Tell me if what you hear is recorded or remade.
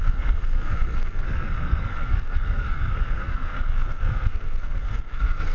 remade